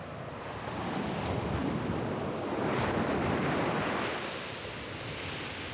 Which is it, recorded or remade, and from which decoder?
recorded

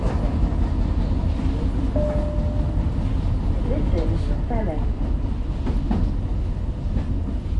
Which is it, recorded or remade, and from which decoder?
recorded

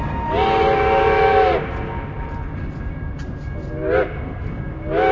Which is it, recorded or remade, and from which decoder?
recorded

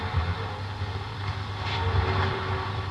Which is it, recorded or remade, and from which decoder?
remade, vocoder, BigVGAN v2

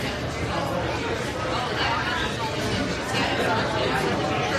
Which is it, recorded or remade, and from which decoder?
recorded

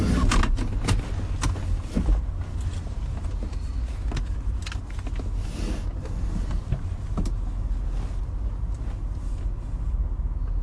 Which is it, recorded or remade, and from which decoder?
recorded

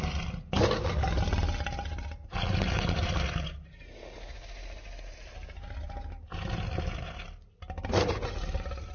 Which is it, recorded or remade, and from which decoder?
recorded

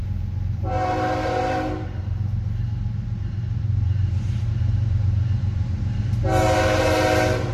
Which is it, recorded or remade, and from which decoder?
remade, vocoder, BigVGAN v2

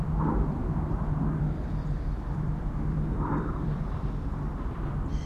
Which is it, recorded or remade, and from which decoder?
remade, vocoder, BigVGAN v2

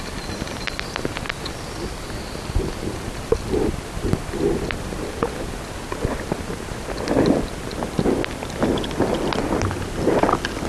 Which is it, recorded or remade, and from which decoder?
recorded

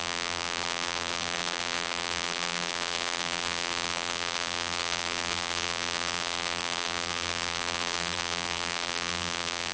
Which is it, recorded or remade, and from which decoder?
remade, vocoder, BigVGAN v2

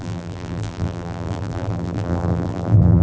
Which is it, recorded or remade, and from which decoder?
remade, vocoder, BigVGAN v2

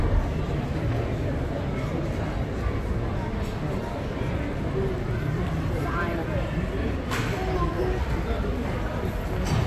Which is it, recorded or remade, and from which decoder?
recorded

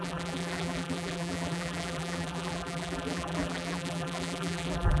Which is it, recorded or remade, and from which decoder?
remade, vocoder, BigVGAN v2